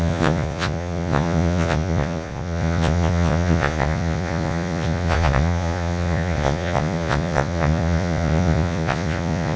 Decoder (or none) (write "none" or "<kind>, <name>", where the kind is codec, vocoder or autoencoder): vocoder, Vocos